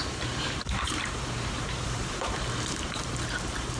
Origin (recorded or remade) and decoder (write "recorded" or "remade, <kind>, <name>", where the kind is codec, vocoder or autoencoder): remade, vocoder, BigVGAN v2